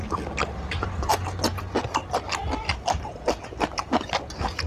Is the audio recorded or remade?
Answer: recorded